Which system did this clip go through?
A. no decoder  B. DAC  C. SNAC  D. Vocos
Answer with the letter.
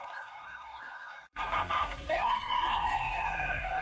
C